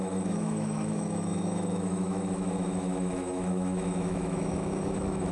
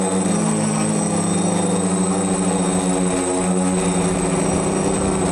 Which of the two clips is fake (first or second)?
first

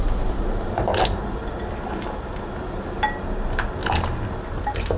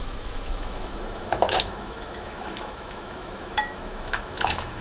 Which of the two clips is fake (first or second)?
second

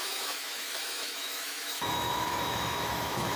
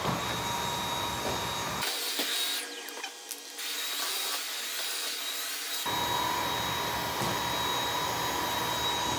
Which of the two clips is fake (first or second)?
first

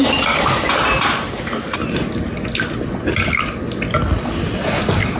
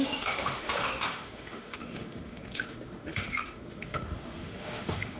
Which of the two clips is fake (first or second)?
second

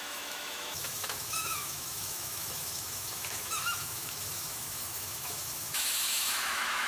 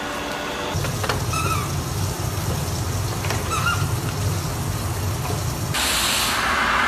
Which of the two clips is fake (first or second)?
first